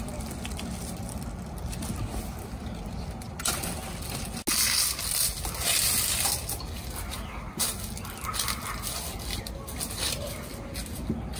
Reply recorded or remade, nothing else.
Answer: recorded